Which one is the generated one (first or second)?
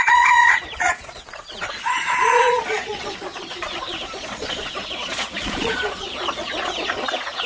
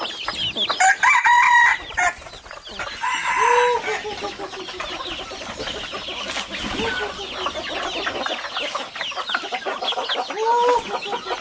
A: first